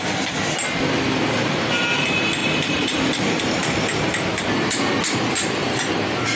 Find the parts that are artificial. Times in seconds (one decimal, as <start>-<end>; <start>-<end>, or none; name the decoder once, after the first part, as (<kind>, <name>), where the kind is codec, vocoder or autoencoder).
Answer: 2.4-3.4 (vocoder, BigVGAN v2); 5.6-6.4